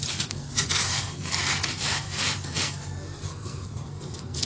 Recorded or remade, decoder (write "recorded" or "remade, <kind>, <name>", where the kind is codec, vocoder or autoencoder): remade, codec, SNAC